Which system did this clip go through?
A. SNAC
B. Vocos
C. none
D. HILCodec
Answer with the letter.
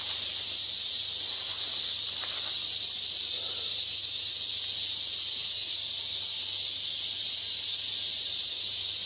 C